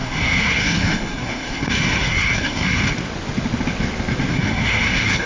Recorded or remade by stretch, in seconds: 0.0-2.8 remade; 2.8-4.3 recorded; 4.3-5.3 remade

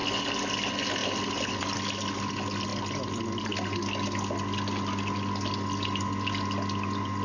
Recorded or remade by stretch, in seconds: 0.0-7.2 recorded

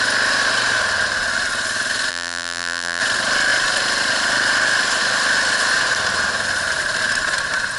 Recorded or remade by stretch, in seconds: 0.0-2.1 recorded; 2.1-3.0 remade; 3.0-7.8 recorded

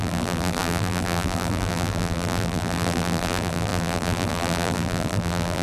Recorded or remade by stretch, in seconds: 0.0-5.6 remade

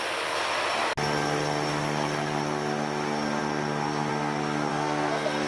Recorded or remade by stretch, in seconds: 0.0-4.7 recorded; 4.7-5.5 remade

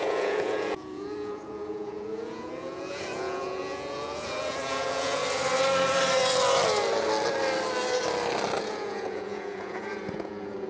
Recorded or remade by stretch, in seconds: 0.0-5.2 remade; 5.2-8.6 recorded; 8.6-10.7 remade

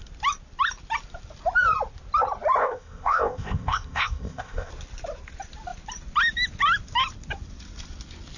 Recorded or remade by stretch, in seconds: 0.0-2.6 recorded; 2.6-4.7 remade; 4.7-8.4 recorded

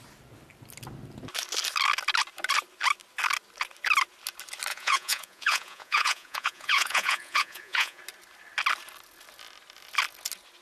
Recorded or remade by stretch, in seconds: 0.0-4.7 recorded; 4.7-8.0 remade; 8.0-10.6 recorded